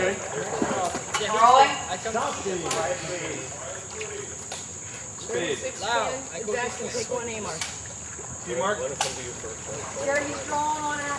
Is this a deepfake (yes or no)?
yes